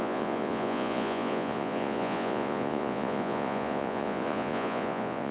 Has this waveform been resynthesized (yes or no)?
yes